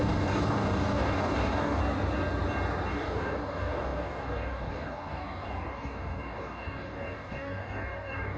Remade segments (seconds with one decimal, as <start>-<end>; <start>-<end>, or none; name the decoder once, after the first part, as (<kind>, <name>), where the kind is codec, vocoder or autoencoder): 0.0-1.8 (codec, DAC); 2.9-8.4